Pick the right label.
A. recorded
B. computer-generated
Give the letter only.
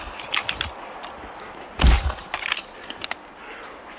A